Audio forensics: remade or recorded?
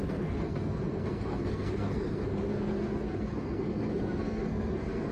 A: remade